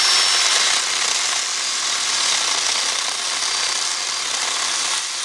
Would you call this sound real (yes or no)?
yes